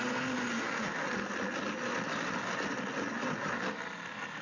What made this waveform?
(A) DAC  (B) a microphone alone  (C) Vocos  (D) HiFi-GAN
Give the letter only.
B